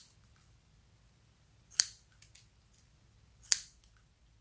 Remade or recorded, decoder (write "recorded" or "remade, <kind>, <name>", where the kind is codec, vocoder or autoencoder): recorded